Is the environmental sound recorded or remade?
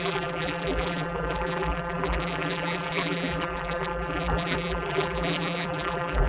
remade